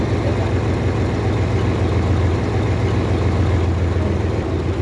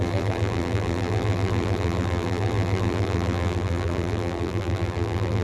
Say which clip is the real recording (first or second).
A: first